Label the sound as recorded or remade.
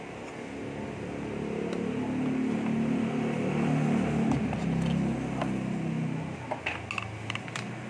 recorded